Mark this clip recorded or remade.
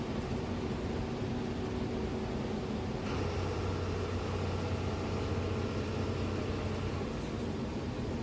recorded